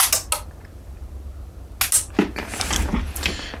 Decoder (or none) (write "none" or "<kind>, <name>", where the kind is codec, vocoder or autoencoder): none